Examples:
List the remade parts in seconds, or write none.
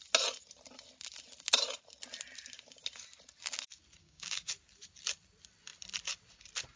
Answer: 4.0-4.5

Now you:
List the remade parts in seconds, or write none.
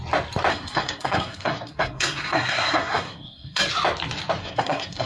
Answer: 0.5-3.6; 4.4-5.1